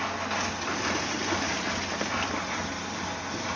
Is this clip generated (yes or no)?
no